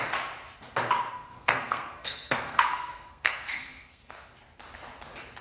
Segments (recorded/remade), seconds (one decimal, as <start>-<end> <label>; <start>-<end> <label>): 0.0-1.1 recorded; 1.1-4.3 remade; 4.3-5.4 recorded